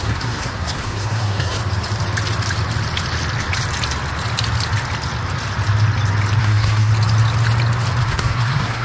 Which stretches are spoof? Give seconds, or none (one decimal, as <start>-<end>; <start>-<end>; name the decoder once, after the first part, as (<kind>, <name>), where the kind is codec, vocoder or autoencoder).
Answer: 0.0-1.6 (codec, SNAC); 6.4-6.9; 8.0-8.8